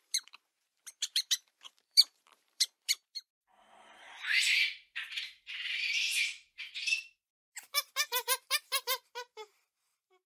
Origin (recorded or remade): remade